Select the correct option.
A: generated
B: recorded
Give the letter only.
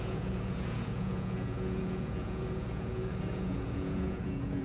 A